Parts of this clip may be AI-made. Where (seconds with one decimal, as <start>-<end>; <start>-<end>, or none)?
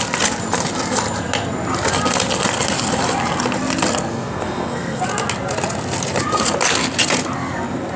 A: 4.1-5.0